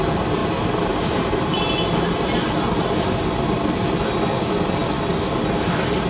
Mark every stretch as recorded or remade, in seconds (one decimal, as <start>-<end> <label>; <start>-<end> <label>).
0.0-6.1 recorded